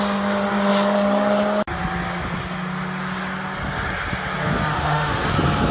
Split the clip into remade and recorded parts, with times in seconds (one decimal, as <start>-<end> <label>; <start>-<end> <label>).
0.0-4.7 recorded; 4.7-5.3 remade; 5.3-5.7 recorded